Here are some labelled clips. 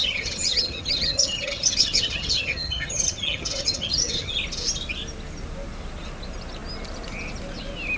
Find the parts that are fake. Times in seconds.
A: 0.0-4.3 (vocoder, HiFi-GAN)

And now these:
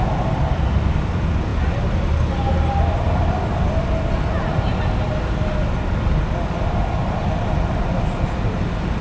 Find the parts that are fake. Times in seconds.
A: none

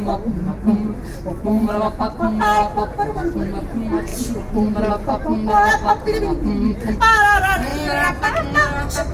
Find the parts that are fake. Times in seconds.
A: none

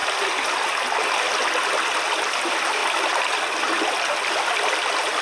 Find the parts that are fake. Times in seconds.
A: 1.7-5.2 (vocoder, BigVGAN v2)

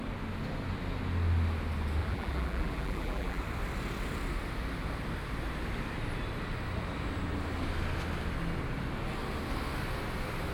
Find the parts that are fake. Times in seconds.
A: 2.0-3.4 (vocoder, BigVGAN v2)